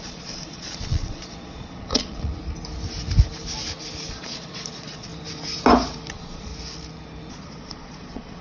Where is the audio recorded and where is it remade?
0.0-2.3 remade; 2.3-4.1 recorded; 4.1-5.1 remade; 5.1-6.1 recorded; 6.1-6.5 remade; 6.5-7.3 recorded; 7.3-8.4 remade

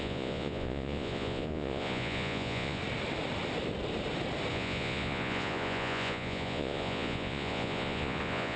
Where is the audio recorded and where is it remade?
0.0-2.8 remade; 2.8-4.5 recorded; 4.5-8.6 remade